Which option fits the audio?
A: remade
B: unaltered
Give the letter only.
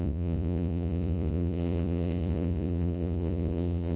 A